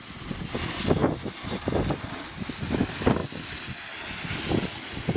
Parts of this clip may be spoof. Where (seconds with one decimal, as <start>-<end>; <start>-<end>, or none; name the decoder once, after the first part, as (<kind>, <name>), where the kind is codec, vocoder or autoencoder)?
none